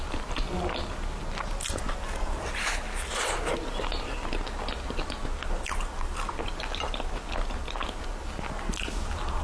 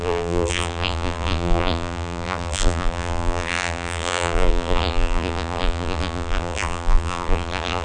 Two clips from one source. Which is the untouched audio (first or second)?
first